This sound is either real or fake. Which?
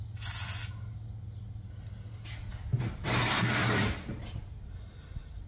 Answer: real